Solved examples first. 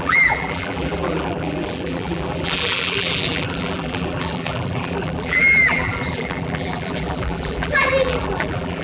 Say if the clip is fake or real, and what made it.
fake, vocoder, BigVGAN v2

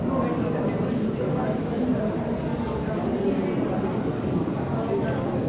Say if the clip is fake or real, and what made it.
real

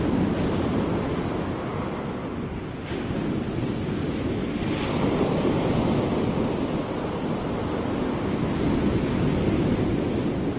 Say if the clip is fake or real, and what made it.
real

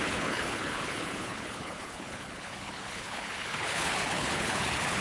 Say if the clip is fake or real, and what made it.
fake, codec, HILCodec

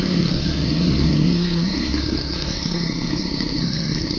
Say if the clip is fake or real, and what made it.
fake, codec, SNAC